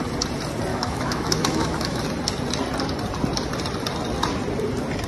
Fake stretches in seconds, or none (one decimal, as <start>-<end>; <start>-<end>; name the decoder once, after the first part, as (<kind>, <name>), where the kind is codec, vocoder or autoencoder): 0.7-2.0 (autoencoder, DAC-VAE)